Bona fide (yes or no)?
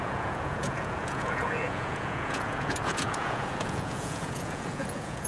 no